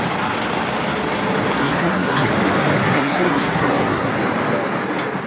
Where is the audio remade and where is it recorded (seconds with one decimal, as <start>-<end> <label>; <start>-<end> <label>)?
0.0-1.5 recorded; 1.5-2.3 remade; 2.3-2.8 recorded; 2.8-4.1 remade; 4.1-5.3 recorded